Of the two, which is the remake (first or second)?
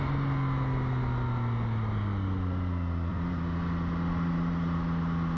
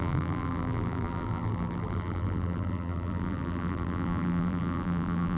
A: second